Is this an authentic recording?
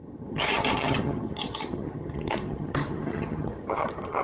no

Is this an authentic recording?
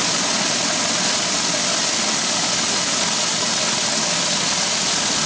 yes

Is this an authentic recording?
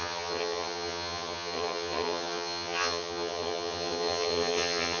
no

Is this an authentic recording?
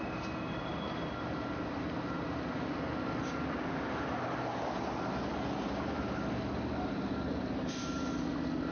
yes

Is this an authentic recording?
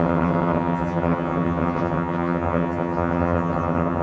no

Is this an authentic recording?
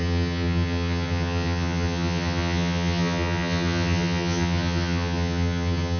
no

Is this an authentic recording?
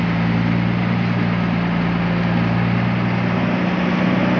yes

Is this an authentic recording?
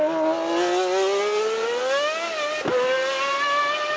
yes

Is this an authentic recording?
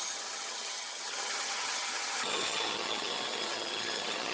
no